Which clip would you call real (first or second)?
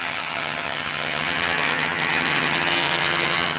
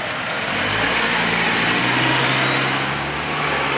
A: second